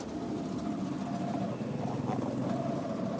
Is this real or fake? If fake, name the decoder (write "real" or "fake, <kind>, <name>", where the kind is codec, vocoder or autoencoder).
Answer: real